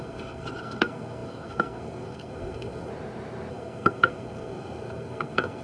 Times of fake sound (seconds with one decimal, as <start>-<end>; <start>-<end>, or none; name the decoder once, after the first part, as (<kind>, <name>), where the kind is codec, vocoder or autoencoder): 0.0-2.9 (codec, SNAC); 3.5-5.6